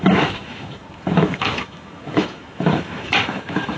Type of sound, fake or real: fake